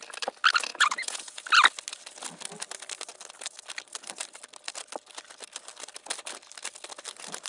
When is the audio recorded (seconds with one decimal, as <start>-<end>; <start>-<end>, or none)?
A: 0.0-0.7; 1.4-7.5